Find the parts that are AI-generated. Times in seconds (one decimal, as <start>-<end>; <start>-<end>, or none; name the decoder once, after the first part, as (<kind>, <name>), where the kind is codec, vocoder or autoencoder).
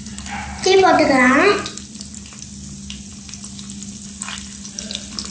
none